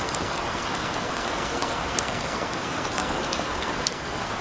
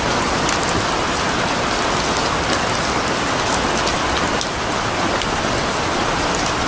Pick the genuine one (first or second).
second